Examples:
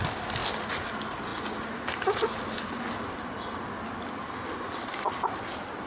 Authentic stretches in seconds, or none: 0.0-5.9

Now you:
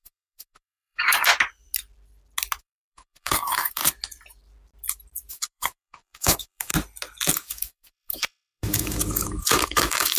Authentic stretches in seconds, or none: 1.3-2.6; 3.8-5.3; 6.7-7.3

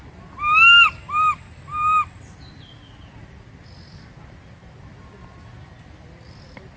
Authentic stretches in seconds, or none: 0.0-6.8